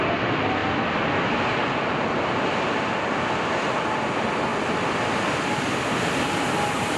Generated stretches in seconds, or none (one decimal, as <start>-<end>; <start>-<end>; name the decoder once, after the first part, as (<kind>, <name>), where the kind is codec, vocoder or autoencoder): none